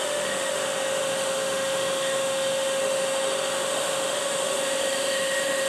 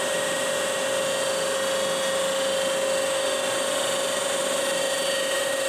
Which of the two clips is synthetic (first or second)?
first